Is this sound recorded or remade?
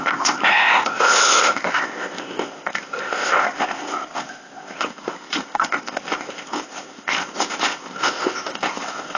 remade